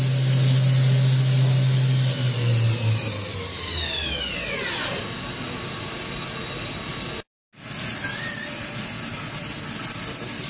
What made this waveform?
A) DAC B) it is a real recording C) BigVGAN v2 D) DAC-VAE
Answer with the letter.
B